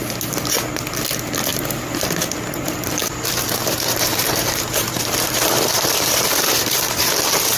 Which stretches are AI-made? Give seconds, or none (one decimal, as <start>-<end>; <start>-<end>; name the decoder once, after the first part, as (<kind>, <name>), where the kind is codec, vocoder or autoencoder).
3.0-7.6 (vocoder, BigVGAN v2)